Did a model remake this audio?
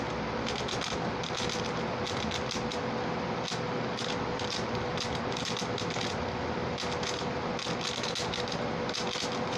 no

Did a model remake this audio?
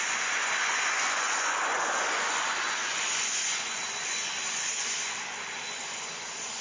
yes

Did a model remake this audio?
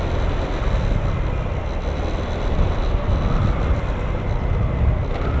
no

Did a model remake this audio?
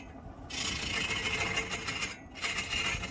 no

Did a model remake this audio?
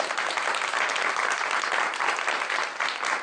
no